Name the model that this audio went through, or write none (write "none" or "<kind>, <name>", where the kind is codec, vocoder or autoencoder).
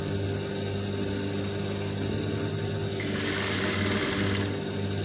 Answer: none